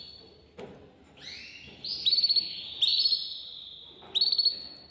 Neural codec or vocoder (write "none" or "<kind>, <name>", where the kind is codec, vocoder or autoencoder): none